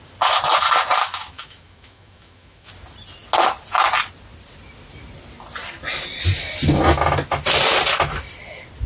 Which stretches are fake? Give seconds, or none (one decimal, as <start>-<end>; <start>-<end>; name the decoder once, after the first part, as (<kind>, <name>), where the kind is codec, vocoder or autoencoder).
1.0-2.7 (autoencoder, DAC-VAE)

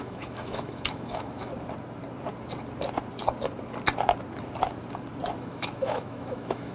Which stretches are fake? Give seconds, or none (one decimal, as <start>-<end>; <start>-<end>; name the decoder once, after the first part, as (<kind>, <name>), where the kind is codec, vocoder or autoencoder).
0.0-1.5 (autoencoder, DAC-VAE); 5.4-6.7

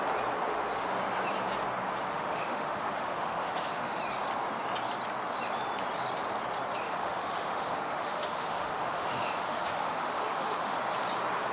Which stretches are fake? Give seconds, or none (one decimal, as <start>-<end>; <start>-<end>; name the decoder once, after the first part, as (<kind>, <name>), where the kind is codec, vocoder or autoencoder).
2.1-4.0 (autoencoder, DAC-VAE); 6.8-10.8

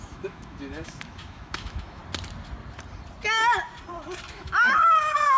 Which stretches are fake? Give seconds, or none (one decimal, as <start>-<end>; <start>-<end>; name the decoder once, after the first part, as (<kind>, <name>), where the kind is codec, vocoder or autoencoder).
0.0-2.0 (autoencoder, DAC-VAE); 4.3-5.4

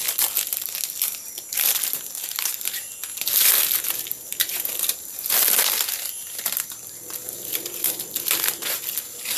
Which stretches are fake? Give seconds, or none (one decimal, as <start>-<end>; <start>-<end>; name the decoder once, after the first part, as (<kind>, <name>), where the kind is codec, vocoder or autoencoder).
none

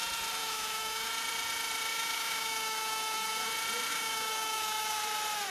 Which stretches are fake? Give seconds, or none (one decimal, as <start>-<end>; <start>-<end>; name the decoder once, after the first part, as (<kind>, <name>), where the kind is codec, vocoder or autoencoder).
0.4-1.1 (autoencoder, DAC-VAE); 1.9-3.5; 3.9-5.0